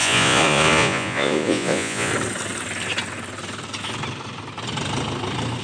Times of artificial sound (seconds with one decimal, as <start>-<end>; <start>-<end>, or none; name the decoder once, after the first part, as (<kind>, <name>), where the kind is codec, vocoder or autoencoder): 0.0-2.1 (vocoder, Vocos)